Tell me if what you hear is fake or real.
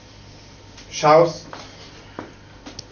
real